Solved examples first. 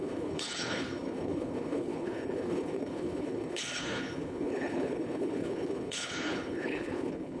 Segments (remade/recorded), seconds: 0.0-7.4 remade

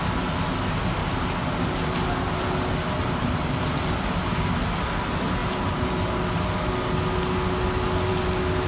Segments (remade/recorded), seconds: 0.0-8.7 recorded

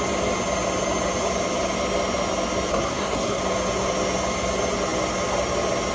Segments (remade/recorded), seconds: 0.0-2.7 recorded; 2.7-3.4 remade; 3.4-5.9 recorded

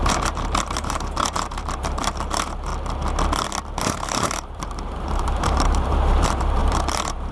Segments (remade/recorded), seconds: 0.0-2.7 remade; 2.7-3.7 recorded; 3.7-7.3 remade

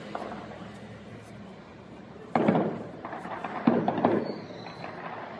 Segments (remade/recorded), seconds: 0.0-1.7 recorded; 1.7-3.6 remade; 3.6-5.4 recorded

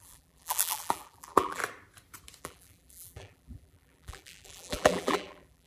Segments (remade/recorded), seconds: 0.0-1.6 remade; 1.6-2.4 recorded; 2.4-5.7 remade

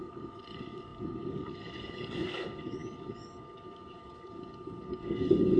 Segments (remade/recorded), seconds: 0.0-5.6 remade